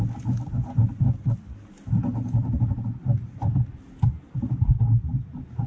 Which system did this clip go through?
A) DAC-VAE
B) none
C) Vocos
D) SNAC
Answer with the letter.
B